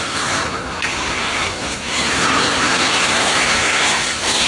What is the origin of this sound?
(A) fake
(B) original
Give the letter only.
A